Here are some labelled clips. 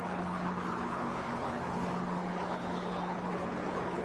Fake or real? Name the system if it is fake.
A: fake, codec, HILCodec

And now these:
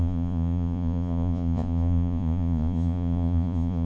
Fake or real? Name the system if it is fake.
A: fake, vocoder, Vocos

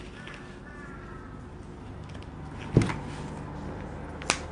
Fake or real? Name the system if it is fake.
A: real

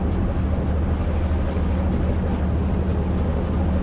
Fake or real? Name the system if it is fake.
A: real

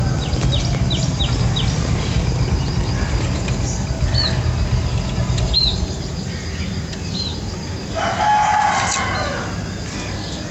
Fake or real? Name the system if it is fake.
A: real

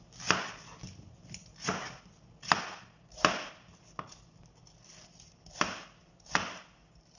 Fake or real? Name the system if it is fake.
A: real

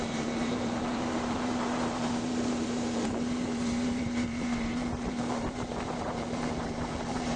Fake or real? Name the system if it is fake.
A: fake, vocoder, BigVGAN v2